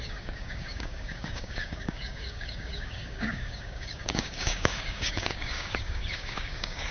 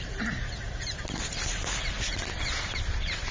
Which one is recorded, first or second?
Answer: second